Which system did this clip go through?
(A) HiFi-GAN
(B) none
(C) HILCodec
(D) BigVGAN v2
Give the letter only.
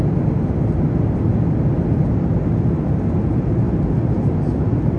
B